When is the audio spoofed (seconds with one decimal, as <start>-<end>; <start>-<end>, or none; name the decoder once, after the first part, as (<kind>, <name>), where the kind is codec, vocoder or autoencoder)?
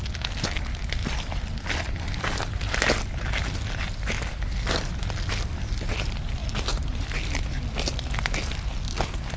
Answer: none